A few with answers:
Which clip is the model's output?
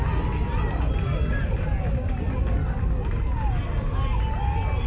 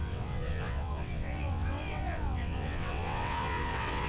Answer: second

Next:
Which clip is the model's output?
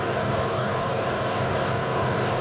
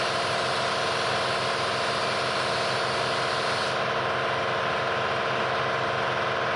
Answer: first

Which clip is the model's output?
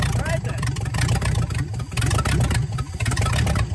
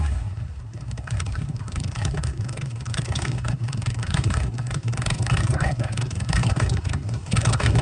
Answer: second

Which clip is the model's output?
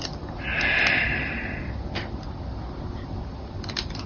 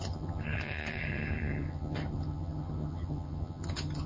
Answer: second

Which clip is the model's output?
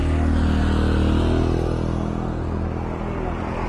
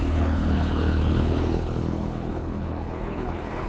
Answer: second